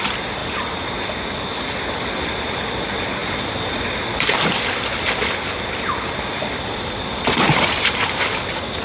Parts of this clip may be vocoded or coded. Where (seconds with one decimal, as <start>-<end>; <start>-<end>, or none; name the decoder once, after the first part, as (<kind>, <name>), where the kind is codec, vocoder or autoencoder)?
3.2-4.0 (vocoder, BigVGAN v2); 6.4-8.4